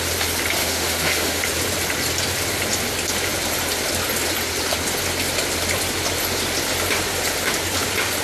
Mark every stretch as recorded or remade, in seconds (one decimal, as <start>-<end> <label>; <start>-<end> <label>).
0.0-0.6 recorded; 0.6-1.4 remade; 1.4-8.2 recorded